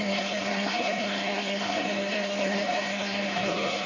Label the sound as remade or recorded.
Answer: remade